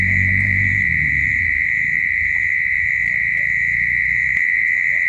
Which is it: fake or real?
fake